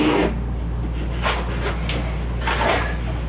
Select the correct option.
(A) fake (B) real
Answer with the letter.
B